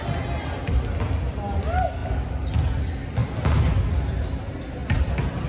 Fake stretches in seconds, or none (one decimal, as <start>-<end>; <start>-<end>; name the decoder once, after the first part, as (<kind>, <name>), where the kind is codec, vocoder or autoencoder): none